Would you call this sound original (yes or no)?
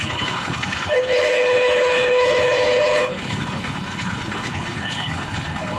no